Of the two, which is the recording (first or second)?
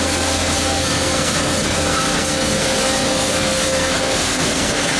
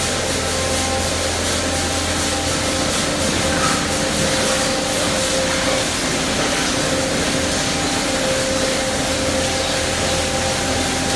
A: second